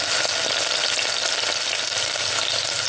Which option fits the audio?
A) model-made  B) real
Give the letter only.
B